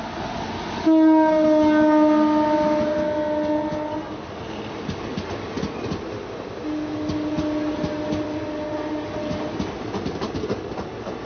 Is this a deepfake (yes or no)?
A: no